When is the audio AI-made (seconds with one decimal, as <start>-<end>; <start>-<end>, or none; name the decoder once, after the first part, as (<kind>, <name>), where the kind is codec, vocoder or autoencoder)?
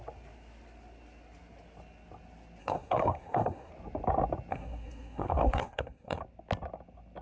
2.6-3.7 (codec, SNAC); 4.5-6.2